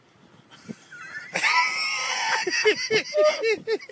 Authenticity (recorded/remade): recorded